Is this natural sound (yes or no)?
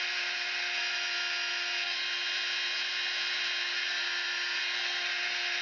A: yes